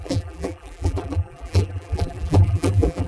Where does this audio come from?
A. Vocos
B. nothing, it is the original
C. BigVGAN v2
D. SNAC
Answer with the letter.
C